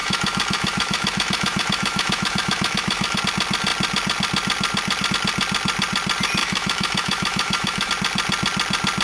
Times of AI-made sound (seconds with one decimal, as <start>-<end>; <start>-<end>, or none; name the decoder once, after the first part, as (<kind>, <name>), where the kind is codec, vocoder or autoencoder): 0.0-3.2 (autoencoder, DAC-VAE); 6.4-7.9